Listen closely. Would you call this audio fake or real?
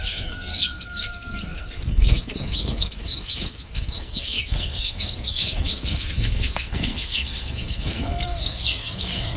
fake